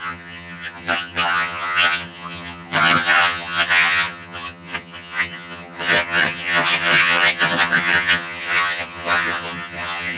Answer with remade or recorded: remade